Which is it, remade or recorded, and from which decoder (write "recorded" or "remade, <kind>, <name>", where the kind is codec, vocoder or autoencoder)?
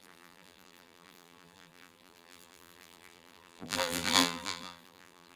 remade, vocoder, BigVGAN v2